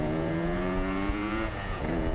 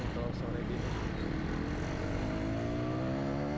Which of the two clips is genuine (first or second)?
second